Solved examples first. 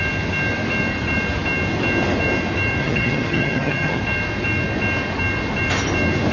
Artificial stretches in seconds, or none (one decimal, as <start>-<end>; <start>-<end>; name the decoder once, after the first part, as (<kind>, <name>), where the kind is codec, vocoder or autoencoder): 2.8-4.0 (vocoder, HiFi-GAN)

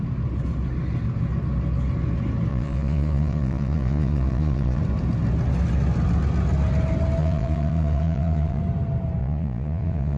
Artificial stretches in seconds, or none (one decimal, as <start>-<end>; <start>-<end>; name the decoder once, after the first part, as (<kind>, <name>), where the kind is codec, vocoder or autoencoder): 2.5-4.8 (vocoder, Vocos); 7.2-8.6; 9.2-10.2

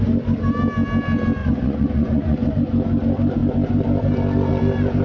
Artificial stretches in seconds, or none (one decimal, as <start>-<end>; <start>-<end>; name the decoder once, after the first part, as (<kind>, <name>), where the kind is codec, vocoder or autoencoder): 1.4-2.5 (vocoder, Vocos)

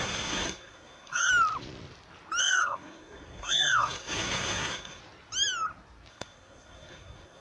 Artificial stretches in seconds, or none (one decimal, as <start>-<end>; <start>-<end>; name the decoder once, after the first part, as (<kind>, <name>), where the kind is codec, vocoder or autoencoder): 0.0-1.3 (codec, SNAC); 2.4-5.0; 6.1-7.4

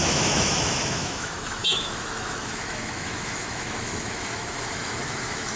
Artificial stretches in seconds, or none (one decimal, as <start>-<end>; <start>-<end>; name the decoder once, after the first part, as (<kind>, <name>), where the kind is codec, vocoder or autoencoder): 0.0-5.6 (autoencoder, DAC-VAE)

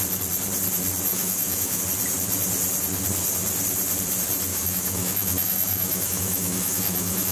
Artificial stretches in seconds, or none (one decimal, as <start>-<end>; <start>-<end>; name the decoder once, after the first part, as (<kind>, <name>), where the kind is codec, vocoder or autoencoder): 1.1-1.8 (autoencoder, DAC-VAE); 4.5-7.3

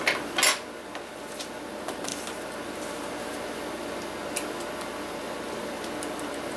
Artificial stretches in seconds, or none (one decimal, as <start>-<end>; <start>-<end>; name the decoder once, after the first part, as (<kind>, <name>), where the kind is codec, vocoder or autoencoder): none